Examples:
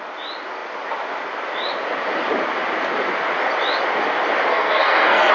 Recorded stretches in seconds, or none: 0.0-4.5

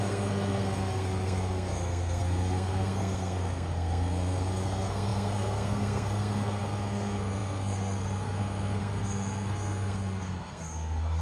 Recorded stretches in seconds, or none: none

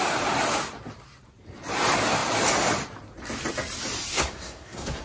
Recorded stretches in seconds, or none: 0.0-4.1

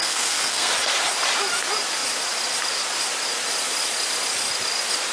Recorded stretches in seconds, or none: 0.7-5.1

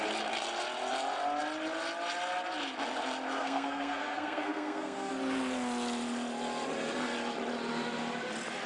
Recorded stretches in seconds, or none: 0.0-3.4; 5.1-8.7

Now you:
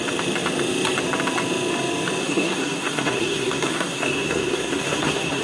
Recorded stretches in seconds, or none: 0.0-2.2

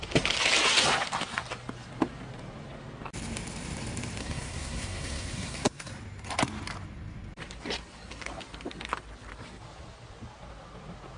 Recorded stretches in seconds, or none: 0.0-4.2; 5.9-11.2

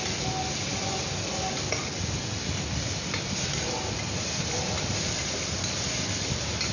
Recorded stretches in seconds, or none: 0.0-6.7